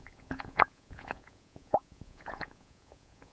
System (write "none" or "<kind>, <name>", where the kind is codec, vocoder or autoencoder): vocoder, Vocos